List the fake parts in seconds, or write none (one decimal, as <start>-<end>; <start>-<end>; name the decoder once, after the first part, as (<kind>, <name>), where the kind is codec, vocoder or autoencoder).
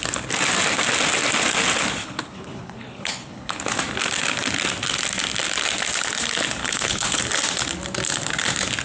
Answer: 2.0-3.6 (codec, HILCodec); 6.6-7.2